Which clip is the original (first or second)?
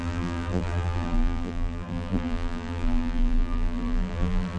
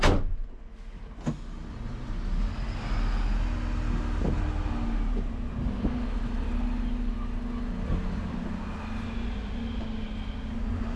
second